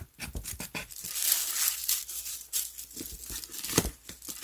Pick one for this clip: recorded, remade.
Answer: recorded